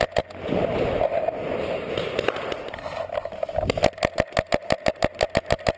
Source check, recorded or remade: recorded